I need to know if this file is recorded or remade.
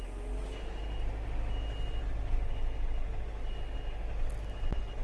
recorded